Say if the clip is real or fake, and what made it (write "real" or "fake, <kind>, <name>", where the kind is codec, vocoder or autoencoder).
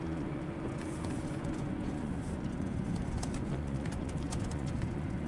fake, vocoder, Vocos